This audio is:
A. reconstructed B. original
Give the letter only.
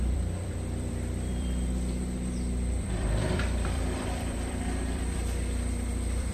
A